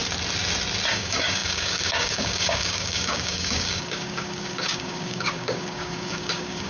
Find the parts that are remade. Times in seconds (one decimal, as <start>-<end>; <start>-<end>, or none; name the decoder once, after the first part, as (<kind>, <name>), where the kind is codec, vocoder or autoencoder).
0.9-6.7 (codec, DAC)